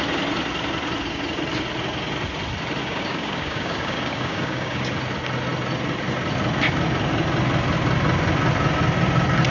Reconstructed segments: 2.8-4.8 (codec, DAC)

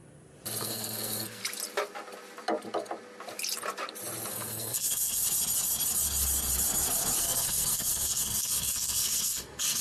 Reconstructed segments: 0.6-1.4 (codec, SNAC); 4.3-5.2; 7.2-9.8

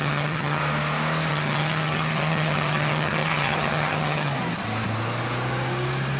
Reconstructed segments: 0.0-0.6 (vocoder, HiFi-GAN); 1.3-4.3

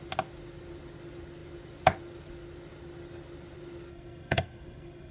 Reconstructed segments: 3.9-5.1 (codec, SNAC)

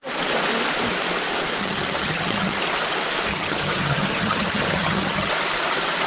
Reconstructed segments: 1.6-2.6 (vocoder, HiFi-GAN); 3.3-5.3

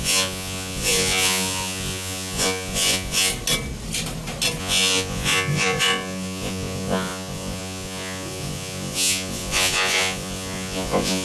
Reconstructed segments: 0.0-3.3 (vocoder, Vocos); 4.6-11.2

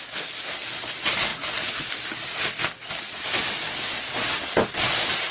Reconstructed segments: none